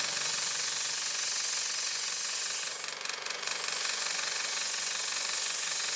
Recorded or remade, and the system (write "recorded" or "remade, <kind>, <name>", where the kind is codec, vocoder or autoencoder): remade, vocoder, Vocos